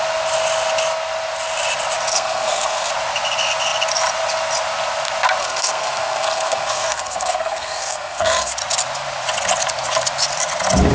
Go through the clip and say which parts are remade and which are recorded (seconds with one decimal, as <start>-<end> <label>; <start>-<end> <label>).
0.0-2.1 recorded; 2.1-2.9 remade; 2.9-5.4 recorded; 5.4-8.5 remade; 8.5-10.9 recorded